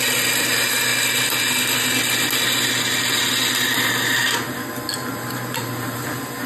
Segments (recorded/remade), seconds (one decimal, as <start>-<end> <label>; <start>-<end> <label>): 0.0-5.0 recorded; 5.0-6.0 remade; 6.0-6.5 recorded